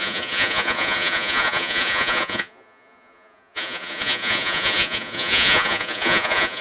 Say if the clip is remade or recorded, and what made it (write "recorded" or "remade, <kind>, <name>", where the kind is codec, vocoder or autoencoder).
remade, vocoder, Vocos